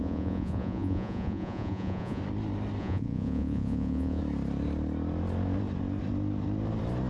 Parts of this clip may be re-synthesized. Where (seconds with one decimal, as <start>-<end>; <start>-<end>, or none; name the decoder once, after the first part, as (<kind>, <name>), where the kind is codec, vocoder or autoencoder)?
0.0-2.2 (vocoder, Vocos); 2.8-4.2